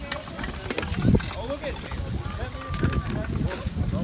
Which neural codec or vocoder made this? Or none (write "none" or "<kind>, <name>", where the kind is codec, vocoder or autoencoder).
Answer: none